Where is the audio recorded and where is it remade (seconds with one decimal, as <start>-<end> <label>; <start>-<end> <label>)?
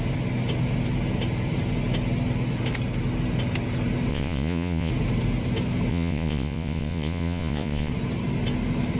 0.0-4.1 recorded; 4.1-4.9 remade; 4.9-5.9 recorded; 5.9-7.9 remade; 7.9-9.0 recorded